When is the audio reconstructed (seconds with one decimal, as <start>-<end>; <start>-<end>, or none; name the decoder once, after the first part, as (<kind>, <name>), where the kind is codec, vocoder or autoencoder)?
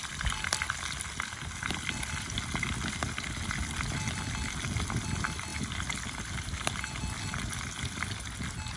none